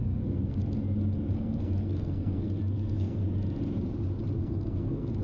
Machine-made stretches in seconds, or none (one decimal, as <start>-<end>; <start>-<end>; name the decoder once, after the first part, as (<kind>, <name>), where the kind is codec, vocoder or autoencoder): 0.0-0.6 (codec, SNAC); 1.3-3.2; 4.4-5.2